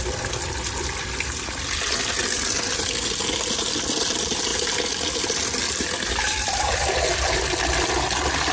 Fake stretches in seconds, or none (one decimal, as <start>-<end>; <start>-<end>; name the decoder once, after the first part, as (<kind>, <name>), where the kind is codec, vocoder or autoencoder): none